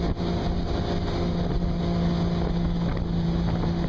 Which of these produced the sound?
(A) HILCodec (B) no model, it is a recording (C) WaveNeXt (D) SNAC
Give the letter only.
B